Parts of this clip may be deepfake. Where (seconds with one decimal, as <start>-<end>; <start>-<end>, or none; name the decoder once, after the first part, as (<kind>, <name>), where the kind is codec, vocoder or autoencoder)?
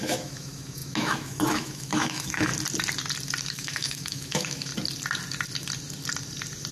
0.0-2.5 (autoencoder, DAC-VAE); 3.5-4.7